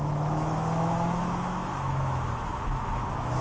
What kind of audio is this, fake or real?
fake